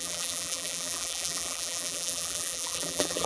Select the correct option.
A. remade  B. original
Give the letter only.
A